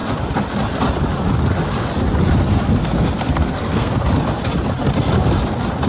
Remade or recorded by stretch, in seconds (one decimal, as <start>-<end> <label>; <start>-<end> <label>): 0.0-2.8 recorded; 2.8-4.0 remade; 4.0-5.9 recorded